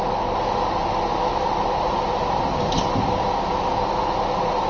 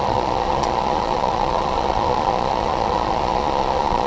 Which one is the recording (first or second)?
first